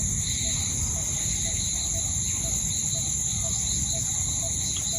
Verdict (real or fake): real